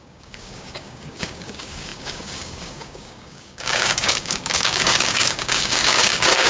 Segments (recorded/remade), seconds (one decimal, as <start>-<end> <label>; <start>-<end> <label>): 0.0-6.5 remade